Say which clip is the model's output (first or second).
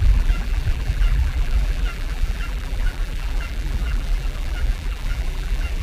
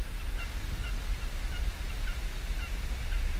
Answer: first